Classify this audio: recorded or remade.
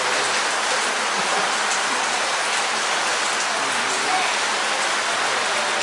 recorded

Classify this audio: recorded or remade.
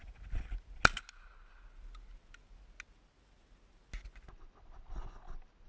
recorded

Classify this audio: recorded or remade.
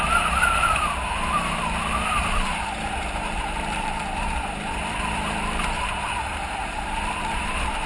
remade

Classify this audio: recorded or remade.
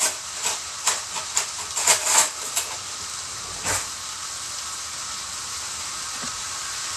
remade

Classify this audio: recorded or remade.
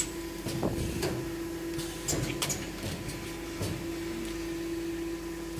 recorded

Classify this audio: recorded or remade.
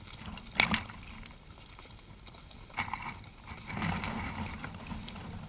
remade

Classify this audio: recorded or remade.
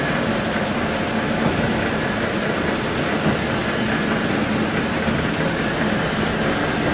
recorded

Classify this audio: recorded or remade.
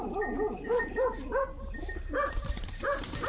remade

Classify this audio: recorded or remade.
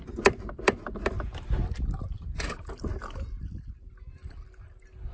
recorded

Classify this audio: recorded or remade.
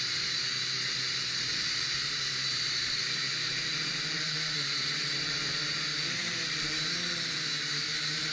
remade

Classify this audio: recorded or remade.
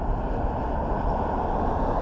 remade